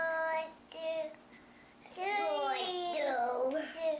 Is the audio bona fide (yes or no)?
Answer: yes